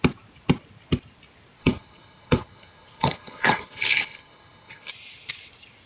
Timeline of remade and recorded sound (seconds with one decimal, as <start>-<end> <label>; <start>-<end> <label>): 0.0-1.6 recorded; 1.6-4.9 remade; 4.9-5.9 recorded